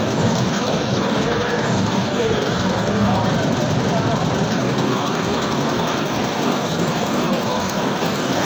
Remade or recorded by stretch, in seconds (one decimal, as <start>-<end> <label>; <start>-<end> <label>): 0.0-3.2 remade; 3.2-4.5 recorded; 4.5-8.4 remade